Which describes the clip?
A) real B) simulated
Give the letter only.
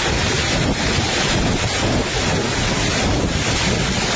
A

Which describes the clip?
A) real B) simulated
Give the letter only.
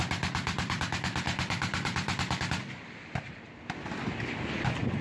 B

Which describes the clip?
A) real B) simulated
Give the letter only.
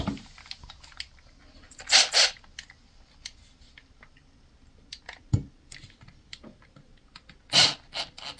A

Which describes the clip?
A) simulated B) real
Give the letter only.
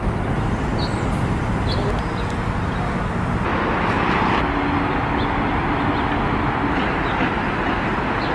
B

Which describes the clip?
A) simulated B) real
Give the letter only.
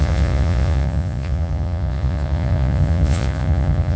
A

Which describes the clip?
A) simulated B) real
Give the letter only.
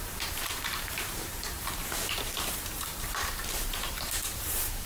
A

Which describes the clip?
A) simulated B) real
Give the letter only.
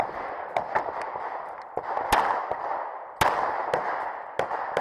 B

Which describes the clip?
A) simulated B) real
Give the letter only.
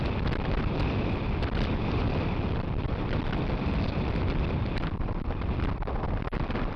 A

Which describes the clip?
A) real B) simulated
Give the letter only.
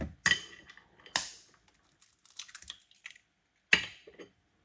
A